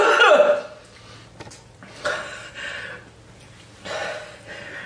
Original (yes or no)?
yes